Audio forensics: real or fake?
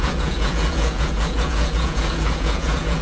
fake